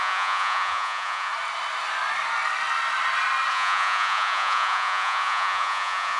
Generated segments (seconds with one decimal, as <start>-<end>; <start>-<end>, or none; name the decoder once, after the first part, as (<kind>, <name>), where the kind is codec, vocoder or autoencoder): 0.0-1.3 (vocoder, Vocos); 3.5-6.2